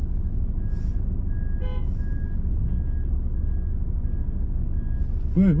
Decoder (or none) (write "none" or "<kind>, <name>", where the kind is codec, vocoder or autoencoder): none